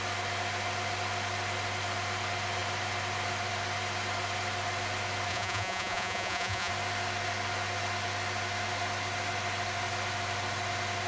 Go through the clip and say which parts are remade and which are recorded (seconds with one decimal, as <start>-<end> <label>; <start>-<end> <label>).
0.0-5.3 recorded; 5.3-6.7 remade; 6.7-11.1 recorded